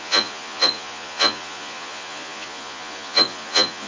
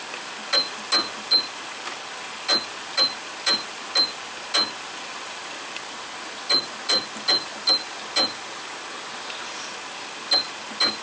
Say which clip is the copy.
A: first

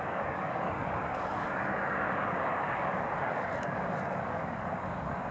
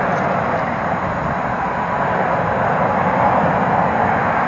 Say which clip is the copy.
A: first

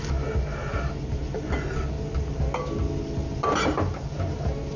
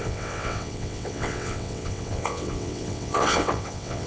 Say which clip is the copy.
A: second